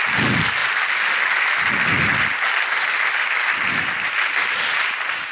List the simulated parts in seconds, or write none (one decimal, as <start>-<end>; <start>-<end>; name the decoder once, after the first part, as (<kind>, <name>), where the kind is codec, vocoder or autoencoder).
none